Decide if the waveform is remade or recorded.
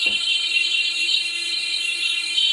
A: remade